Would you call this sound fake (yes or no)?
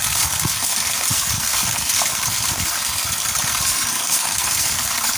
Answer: yes